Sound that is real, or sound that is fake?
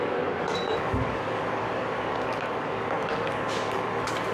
fake